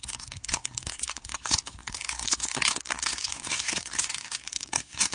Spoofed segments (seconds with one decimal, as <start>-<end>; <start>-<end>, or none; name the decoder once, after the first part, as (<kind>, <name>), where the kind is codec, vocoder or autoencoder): 0.0-5.1 (codec, SNAC)